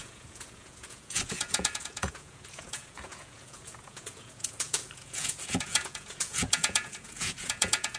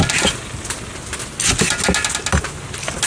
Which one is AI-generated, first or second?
first